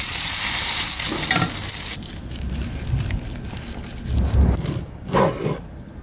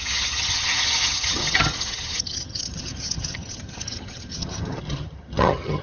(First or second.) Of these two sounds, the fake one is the second